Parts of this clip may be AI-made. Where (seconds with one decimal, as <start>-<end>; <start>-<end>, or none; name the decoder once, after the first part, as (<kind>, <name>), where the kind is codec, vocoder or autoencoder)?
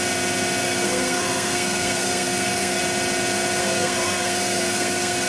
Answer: 0.6-2.8 (codec, SNAC); 3.6-5.3